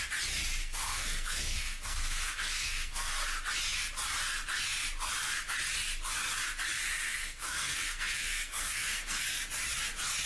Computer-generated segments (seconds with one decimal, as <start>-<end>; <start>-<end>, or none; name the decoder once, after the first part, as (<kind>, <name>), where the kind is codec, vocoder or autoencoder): 0.6-3.1 (codec, SNAC); 6.9-9.2